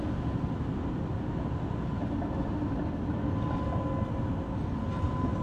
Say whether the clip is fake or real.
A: real